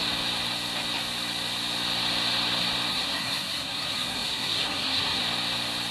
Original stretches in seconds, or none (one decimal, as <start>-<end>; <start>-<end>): 0.0-2.9; 5.2-5.9